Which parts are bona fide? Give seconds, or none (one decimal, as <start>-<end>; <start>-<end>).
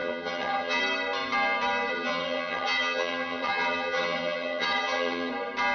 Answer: 0.8-1.9; 5.3-5.7